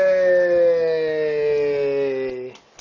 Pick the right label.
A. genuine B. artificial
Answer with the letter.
A